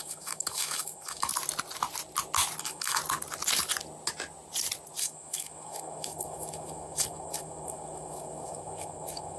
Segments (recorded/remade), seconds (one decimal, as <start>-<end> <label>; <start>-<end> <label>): 0.0-1.3 remade; 1.3-2.6 recorded; 2.6-3.0 remade; 3.0-5.0 recorded; 5.0-9.4 remade